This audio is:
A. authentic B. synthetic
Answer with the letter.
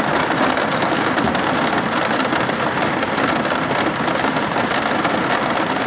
A